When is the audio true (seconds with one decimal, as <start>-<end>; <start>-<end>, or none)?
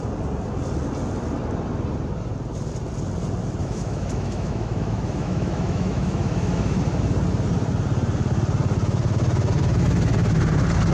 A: 0.0-3.6; 6.8-10.9